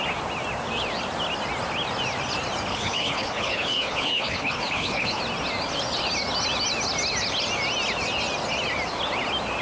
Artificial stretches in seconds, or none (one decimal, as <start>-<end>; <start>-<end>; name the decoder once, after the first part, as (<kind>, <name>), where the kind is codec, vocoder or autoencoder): 2.7-5.2 (codec, HILCodec)